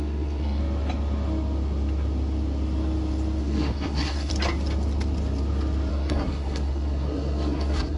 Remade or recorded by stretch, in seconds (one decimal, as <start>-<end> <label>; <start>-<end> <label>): 0.0-0.6 remade; 0.6-3.4 recorded; 3.4-4.3 remade; 4.3-5.9 recorded; 5.9-8.0 remade